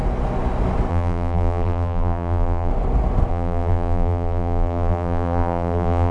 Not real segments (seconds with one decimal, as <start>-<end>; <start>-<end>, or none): 0.9-2.7; 3.3-6.1